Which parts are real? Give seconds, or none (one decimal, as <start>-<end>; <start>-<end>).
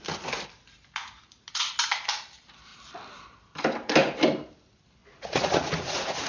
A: 0.0-1.0; 1.7-5.0